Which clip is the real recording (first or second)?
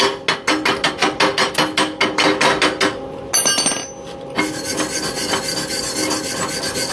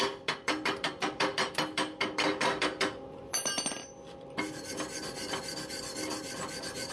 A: first